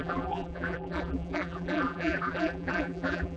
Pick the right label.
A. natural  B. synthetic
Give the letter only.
B